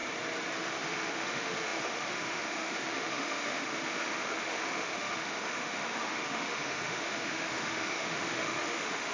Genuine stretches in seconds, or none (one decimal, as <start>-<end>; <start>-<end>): 0.0-0.6